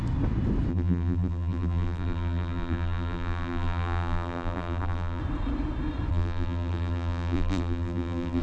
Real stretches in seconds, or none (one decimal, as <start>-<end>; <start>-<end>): 0.0-0.7; 5.2-6.1